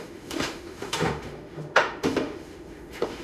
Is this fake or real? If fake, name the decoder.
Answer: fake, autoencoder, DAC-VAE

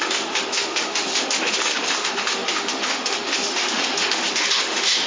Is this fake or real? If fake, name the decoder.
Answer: fake, autoencoder, DAC-VAE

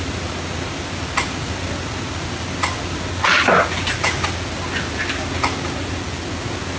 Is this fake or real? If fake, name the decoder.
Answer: real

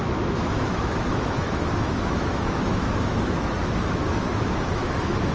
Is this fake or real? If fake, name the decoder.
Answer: fake, autoencoder, DAC-VAE